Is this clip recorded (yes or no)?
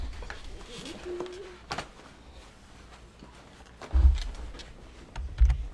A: yes